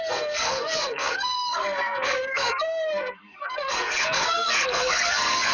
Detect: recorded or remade remade